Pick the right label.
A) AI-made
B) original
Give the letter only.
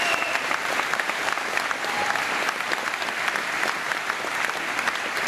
A